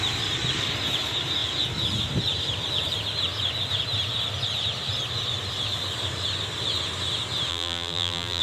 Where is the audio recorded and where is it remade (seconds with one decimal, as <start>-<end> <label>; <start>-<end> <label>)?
0.0-7.5 recorded; 7.5-8.4 remade